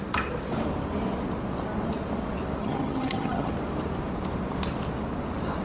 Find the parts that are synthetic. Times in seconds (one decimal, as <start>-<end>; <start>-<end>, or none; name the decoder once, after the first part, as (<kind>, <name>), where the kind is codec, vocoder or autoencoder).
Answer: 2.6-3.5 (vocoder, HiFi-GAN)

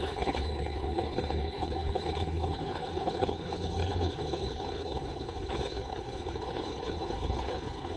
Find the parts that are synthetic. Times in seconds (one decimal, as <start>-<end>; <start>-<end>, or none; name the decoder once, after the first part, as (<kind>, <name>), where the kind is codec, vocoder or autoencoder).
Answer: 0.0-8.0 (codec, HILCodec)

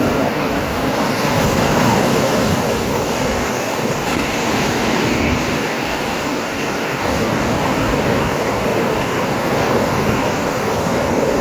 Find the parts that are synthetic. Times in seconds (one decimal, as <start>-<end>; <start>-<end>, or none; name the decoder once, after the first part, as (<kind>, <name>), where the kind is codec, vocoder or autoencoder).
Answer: 0.0-11.4 (codec, DAC)

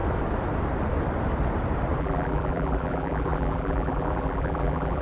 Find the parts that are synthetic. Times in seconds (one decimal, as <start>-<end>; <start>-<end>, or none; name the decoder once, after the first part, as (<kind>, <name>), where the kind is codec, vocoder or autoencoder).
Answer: 2.0-5.0 (vocoder, BigVGAN v2)

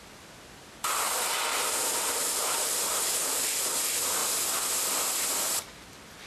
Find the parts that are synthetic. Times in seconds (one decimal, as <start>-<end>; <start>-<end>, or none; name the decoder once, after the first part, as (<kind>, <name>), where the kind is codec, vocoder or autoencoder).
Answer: 1.5-2.7 (vocoder, BigVGAN v2)

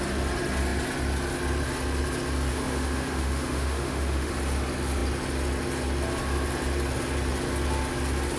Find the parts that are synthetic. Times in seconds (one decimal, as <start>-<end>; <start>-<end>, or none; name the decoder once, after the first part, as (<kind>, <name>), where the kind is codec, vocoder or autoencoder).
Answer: 2.5-4.3 (autoencoder, DAC-VAE)

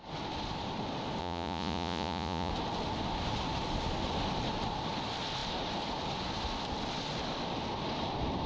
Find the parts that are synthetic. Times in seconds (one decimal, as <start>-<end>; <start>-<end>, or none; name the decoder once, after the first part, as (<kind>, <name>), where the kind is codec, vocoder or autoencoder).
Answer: 1.2-2.5 (vocoder, Vocos)

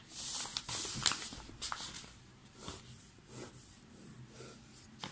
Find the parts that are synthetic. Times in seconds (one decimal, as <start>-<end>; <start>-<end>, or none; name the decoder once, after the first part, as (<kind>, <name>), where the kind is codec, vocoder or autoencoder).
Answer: 2.4-3.0 (vocoder, BigVGAN v2)